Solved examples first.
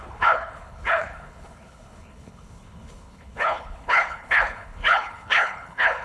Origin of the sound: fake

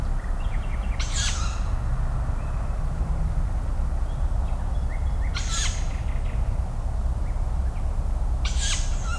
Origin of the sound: real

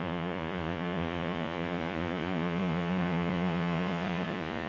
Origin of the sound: fake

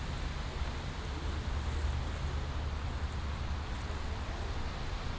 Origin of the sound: real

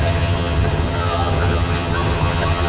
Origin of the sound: fake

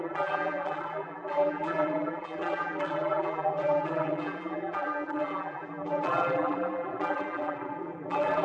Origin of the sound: fake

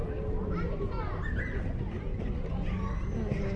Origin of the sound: real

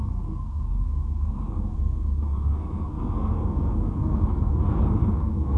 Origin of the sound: fake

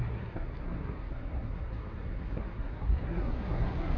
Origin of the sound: fake